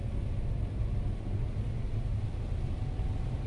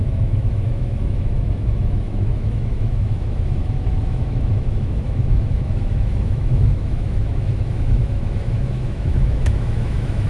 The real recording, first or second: first